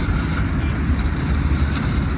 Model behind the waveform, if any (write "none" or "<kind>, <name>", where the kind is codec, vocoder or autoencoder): none